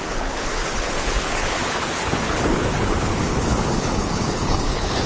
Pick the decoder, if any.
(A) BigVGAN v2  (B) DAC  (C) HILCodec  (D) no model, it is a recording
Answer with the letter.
C